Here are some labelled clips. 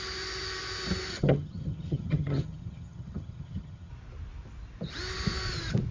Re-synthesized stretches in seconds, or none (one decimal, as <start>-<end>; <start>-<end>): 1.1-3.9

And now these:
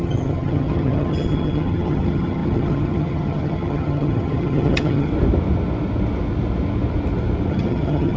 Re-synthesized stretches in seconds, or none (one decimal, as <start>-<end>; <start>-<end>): 0.0-5.1; 7.5-8.2

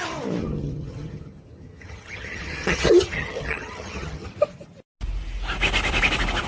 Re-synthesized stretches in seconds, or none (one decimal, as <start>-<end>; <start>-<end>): 0.4-4.3

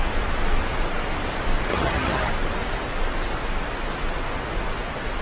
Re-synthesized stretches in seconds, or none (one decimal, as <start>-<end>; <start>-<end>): 1.7-2.3